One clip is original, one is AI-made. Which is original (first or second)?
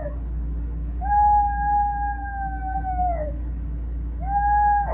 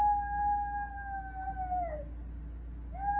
second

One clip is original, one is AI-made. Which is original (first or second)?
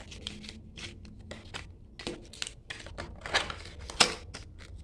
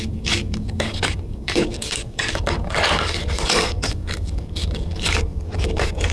first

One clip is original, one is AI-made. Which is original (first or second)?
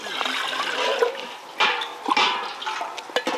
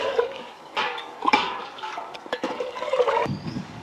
first